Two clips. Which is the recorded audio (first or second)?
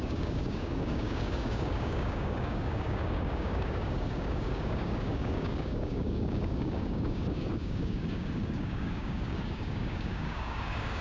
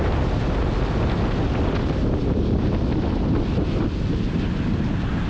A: second